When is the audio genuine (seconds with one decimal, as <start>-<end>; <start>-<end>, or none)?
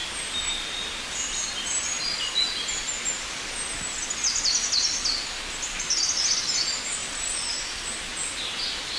0.0-9.0